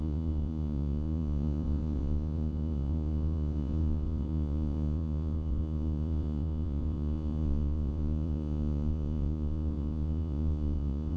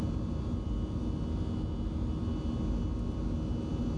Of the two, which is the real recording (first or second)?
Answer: second